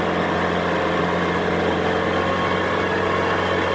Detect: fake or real real